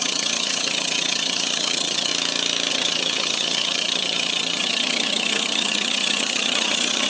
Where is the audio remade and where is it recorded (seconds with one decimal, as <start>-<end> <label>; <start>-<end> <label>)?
0.0-2.1 remade; 2.1-2.7 recorded; 2.7-7.1 remade